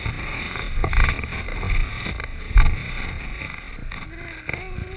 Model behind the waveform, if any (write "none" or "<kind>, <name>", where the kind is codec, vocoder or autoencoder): none